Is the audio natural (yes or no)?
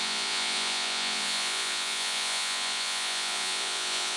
no